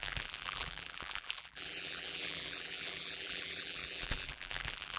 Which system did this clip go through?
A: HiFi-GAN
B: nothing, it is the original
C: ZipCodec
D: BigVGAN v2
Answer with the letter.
D